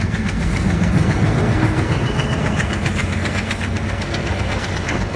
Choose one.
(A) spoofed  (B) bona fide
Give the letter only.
A